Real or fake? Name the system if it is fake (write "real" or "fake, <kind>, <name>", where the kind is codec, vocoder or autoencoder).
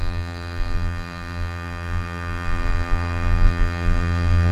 fake, vocoder, BigVGAN v2